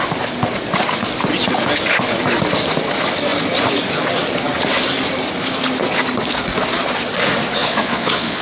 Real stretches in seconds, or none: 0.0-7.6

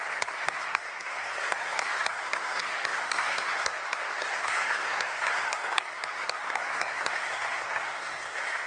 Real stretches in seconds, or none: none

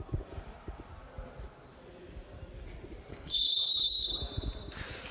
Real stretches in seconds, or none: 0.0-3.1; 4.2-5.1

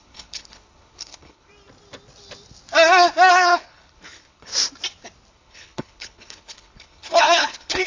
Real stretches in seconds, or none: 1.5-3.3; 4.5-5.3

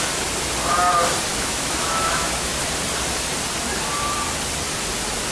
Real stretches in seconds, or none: 0.0-1.3; 2.6-5.3

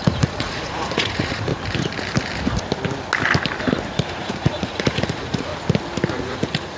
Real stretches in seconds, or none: 1.5-4.2; 5.5-6.2